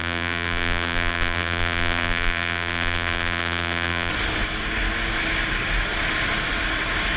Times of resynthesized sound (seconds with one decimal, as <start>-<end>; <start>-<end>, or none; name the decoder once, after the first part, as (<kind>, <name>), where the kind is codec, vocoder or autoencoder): 0.0-4.1 (vocoder, BigVGAN v2)